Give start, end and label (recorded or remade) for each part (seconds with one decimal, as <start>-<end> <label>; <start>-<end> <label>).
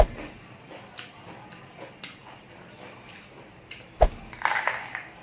0.0-5.2 recorded